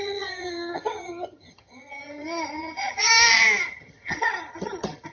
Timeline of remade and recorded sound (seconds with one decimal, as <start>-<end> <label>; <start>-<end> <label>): 0.0-3.1 remade; 3.1-3.6 recorded; 3.6-5.1 remade